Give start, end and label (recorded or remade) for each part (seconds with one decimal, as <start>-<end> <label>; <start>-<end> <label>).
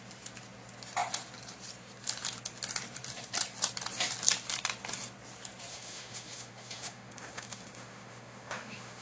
0.0-5.7 recorded; 5.7-9.0 remade